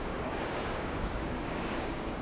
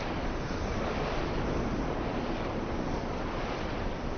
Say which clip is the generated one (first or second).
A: first